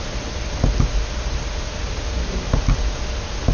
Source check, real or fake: real